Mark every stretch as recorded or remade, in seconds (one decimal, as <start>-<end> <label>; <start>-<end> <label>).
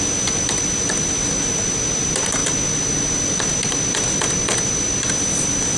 0.0-5.8 recorded